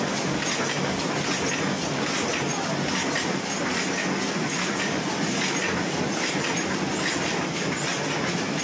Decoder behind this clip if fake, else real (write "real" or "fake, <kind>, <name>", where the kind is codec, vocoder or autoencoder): real